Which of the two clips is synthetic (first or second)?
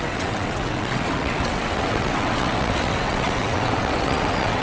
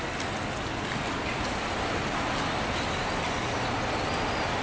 first